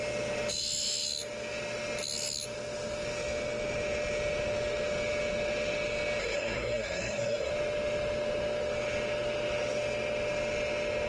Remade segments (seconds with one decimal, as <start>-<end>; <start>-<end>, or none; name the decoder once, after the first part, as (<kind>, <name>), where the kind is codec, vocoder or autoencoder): 6.2-7.5 (codec, SNAC)